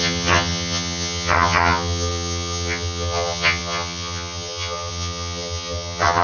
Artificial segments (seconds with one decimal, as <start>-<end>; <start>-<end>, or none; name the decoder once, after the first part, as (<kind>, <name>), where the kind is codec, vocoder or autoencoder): 0.0-6.2 (vocoder, HiFi-GAN)